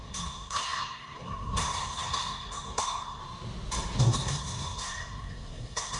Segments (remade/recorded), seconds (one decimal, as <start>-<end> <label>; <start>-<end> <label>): 0.0-3.2 remade; 3.2-4.0 recorded; 4.0-6.0 remade